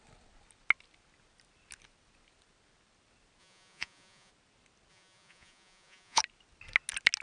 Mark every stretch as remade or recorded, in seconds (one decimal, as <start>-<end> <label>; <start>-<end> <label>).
0.0-3.4 recorded; 3.4-4.3 remade; 4.3-4.9 recorded; 4.9-6.2 remade; 6.2-7.2 recorded